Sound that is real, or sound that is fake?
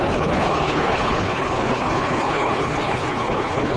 fake